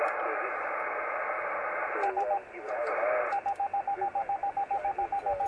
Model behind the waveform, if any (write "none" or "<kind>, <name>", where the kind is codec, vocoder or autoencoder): none